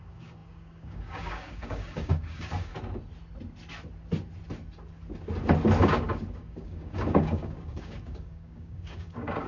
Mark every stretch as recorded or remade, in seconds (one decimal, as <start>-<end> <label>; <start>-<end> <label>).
0.0-2.7 remade; 2.7-5.8 recorded; 5.8-9.5 remade